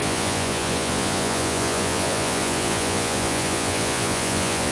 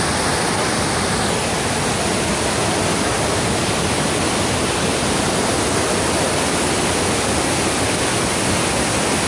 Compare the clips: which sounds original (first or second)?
second